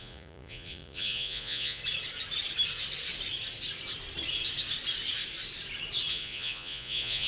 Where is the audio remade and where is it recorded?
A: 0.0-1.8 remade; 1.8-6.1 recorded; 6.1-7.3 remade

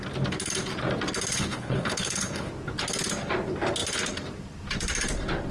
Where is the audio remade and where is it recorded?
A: 0.0-1.3 recorded; 1.3-2.5 remade; 2.5-5.5 recorded

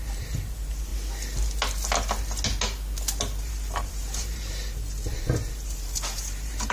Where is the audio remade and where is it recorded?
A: 0.0-0.9 remade; 0.9-3.4 recorded; 3.4-6.7 remade